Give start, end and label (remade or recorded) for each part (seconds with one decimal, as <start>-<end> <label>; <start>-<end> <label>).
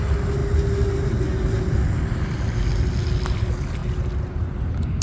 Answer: 0.0-5.0 recorded